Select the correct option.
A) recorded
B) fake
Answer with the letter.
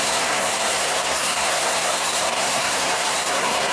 B